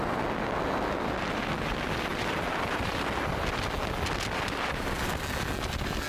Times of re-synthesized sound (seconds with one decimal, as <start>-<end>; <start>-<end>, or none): none